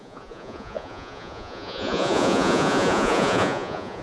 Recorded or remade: remade